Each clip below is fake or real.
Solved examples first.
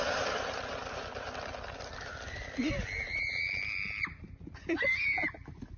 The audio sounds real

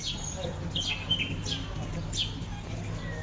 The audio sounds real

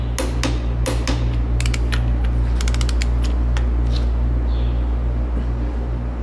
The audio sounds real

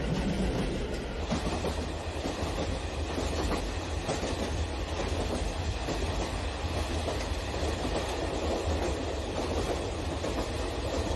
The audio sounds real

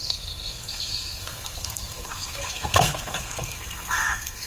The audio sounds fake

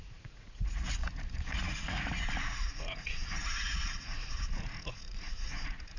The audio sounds fake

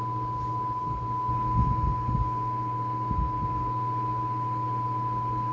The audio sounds real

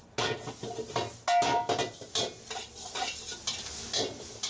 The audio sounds real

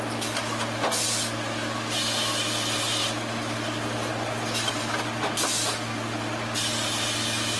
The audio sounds real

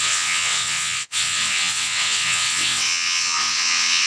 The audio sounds fake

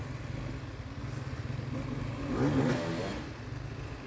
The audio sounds real